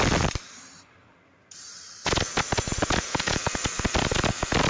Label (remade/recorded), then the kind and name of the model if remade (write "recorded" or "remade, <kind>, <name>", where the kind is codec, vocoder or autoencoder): remade, vocoder, BigVGAN v2